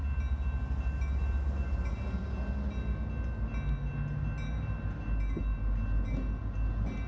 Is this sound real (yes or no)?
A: yes